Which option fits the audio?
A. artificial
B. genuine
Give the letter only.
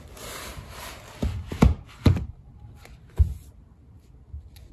B